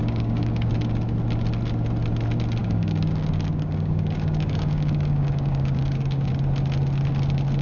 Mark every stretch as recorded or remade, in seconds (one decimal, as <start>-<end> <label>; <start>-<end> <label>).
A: 0.0-0.7 remade; 0.7-2.6 recorded; 2.6-6.3 remade; 6.3-7.6 recorded